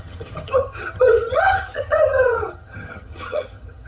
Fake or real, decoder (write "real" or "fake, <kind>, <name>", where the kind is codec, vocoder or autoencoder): fake, vocoder, HiFi-GAN